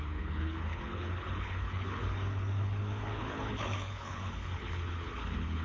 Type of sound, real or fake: fake